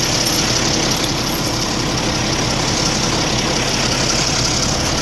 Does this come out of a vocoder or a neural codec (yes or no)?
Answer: no